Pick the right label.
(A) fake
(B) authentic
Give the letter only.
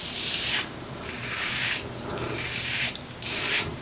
A